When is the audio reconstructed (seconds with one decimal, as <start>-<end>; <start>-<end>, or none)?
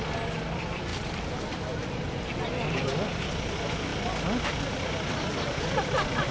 none